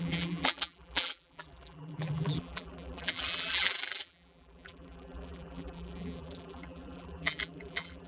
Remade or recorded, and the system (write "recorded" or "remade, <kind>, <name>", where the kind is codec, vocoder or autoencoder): remade, vocoder, BigVGAN v2